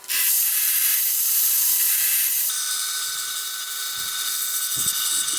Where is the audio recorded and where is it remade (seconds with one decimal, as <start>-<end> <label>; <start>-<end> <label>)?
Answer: 0.0-0.9 recorded; 0.9-1.9 remade; 1.9-2.3 recorded; 2.3-3.8 remade; 3.8-5.4 recorded